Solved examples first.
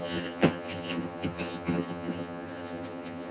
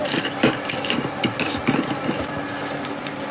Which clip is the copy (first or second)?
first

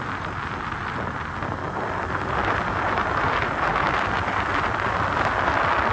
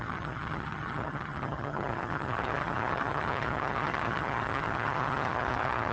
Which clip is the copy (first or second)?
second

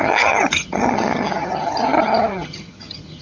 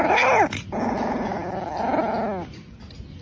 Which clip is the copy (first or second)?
first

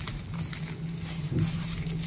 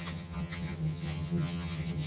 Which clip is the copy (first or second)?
second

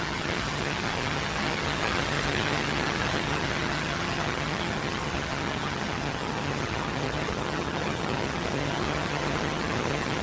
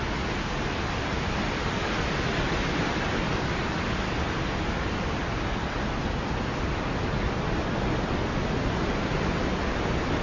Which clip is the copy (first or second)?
first